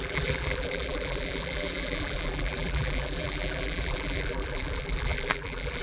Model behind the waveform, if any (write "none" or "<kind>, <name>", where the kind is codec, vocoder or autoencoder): vocoder, BigVGAN v2